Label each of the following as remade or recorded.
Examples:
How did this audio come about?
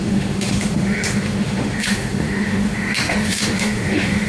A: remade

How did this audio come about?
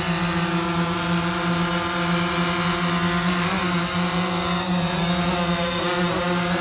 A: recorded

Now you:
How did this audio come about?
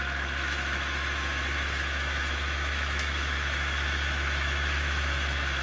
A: remade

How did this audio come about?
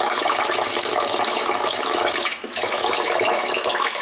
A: remade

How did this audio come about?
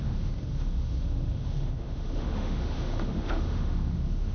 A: remade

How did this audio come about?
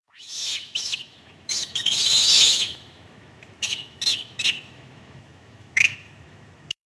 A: remade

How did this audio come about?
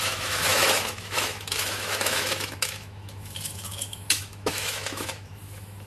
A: remade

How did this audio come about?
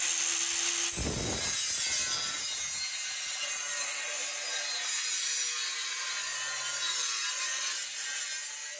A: recorded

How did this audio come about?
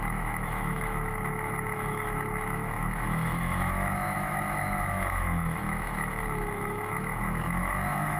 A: remade